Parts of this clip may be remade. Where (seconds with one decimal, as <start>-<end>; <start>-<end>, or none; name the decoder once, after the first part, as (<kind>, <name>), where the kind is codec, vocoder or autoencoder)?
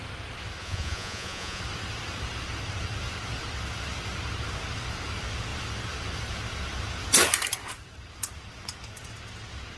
0.6-1.6 (vocoder, Vocos)